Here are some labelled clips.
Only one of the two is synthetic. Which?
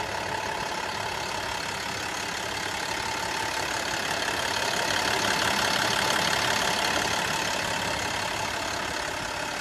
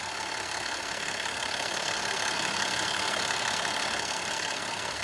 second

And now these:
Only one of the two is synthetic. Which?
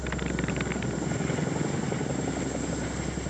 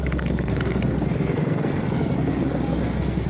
second